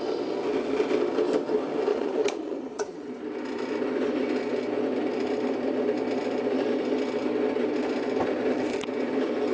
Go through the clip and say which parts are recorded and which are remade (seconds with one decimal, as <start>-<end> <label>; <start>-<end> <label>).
0.0-1.9 recorded; 1.9-3.1 remade; 3.1-9.5 recorded